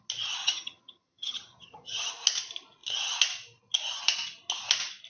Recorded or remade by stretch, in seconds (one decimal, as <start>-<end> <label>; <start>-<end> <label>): 0.0-0.4 recorded; 0.4-2.1 remade; 2.1-5.1 recorded

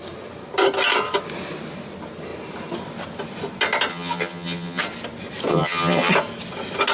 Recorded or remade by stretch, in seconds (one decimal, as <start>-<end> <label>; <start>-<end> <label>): 0.0-3.9 recorded; 3.9-4.8 remade; 4.8-5.5 recorded; 5.5-6.1 remade; 6.1-6.9 recorded

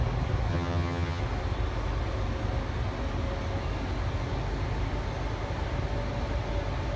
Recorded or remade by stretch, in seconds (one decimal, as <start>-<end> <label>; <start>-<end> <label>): 0.0-0.5 recorded; 0.5-1.2 remade; 1.2-7.0 recorded